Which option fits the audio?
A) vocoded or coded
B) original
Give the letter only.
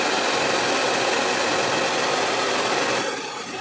B